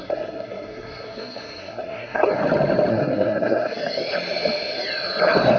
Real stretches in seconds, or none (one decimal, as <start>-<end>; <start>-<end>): 2.4-2.9; 3.8-5.6